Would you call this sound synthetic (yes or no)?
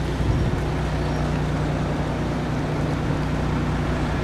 no